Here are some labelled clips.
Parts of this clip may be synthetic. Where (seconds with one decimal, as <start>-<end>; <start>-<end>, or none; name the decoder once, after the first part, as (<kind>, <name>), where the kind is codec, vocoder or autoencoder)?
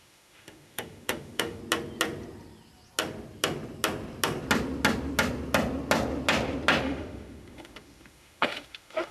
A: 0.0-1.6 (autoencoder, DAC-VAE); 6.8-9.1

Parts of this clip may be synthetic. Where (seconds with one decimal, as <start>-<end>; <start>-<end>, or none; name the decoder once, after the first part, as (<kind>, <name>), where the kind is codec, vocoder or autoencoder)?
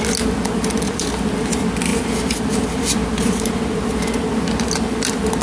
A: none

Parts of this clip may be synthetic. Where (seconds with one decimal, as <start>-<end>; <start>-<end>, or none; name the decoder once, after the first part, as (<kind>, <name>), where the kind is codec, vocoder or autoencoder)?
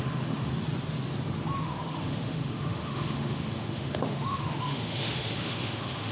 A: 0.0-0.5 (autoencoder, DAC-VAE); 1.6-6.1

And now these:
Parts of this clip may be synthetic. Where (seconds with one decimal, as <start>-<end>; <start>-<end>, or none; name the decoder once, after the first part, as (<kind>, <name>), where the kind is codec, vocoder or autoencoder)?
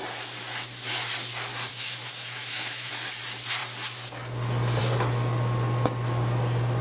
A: 1.7-2.9 (autoencoder, DAC-VAE)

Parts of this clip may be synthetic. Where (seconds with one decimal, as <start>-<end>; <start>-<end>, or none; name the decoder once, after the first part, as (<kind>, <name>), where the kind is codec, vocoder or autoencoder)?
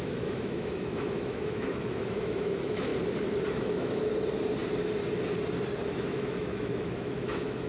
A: 0.0-2.9 (autoencoder, DAC-VAE); 3.5-4.1; 5.8-7.7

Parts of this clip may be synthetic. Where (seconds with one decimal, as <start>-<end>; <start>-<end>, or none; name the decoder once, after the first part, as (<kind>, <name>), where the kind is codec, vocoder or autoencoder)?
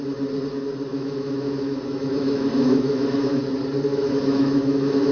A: 0.9-3.4 (autoencoder, DAC-VAE); 3.9-5.1